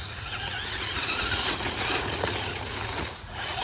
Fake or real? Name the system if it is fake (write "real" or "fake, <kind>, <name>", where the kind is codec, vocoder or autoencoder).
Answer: fake, vocoder, Vocos